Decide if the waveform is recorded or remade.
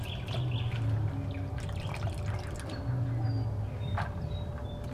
recorded